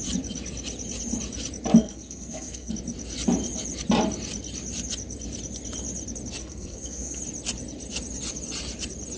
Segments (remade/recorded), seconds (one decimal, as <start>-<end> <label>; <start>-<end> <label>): 0.0-1.8 recorded; 1.8-2.7 remade; 2.7-6.4 recorded; 6.4-7.2 remade; 7.2-9.2 recorded